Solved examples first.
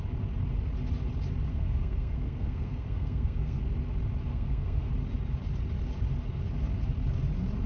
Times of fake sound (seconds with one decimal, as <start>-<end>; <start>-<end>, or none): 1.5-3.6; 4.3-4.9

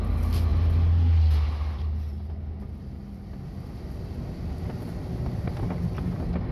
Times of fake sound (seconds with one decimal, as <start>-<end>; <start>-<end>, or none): none

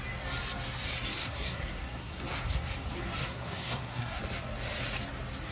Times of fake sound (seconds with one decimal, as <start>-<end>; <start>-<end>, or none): 1.2-2.2; 3.2-4.2

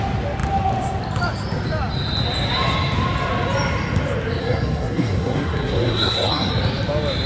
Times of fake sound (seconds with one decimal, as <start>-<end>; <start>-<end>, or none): 4.4-6.5

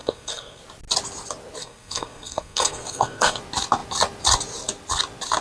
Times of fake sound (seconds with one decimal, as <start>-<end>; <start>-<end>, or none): 0.0-0.6; 1.6-3.4

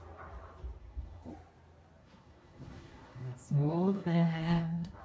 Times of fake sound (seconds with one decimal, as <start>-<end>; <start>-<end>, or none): 0.8-1.3; 2.0-5.0

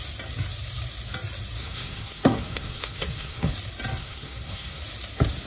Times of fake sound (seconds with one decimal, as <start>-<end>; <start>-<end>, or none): 1.6-3.5; 4.0-4.8

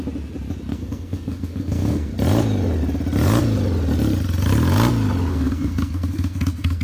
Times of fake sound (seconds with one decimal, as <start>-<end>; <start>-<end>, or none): 0.7-2.1; 5.3-6.8